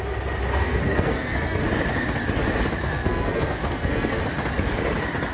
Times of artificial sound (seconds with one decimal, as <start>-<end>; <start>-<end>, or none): 0.5-1.6; 2.9-4.2